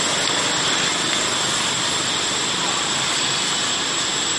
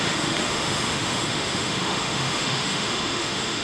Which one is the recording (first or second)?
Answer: first